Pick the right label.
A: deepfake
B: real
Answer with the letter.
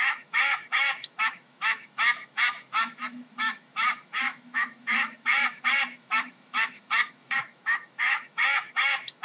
A